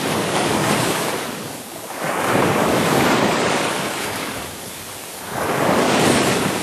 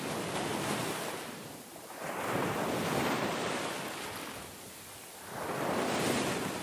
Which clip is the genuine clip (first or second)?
second